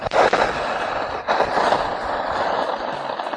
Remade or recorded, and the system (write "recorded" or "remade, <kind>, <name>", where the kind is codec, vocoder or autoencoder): remade, vocoder, BigVGAN v2